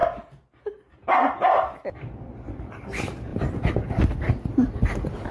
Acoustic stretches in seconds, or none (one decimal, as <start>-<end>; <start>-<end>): 0.0-5.3